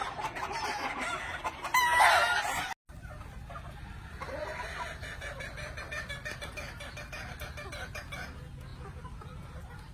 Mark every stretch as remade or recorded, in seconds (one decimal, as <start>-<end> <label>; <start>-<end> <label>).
0.0-9.9 recorded